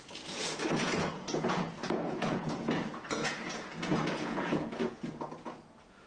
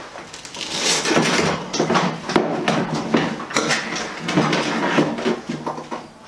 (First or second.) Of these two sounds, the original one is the second